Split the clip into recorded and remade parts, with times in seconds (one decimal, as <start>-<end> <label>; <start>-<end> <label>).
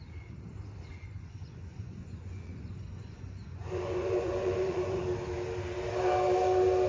0.0-0.9 recorded; 0.9-5.0 remade; 5.0-6.9 recorded